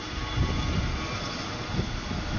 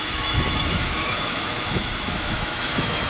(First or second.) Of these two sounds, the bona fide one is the first